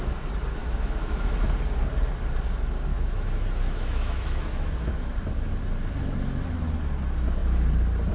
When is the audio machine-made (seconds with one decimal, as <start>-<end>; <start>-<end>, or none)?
0.6-1.3; 2.9-5.0